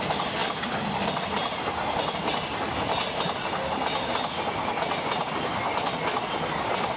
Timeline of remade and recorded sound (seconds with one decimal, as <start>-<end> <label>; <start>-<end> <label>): 0.0-7.0 recorded